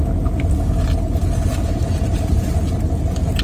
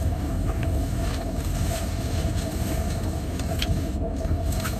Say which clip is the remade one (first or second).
second